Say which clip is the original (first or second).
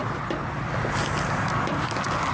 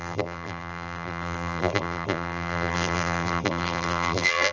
first